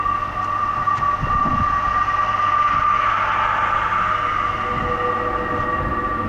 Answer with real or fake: real